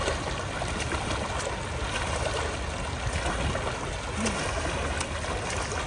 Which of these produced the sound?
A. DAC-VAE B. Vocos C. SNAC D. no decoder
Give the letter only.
D